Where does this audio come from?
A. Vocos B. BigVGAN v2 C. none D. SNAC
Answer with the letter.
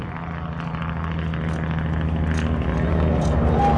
C